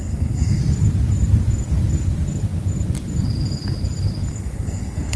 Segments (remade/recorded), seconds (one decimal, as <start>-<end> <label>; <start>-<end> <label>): 0.0-0.6 remade; 0.6-4.3 recorded; 4.3-5.2 remade